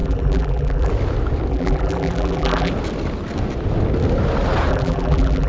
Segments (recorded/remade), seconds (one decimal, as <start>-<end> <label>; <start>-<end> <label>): 0.0-0.9 remade; 0.9-1.5 recorded; 1.5-2.7 remade; 2.7-4.7 recorded; 4.7-5.5 remade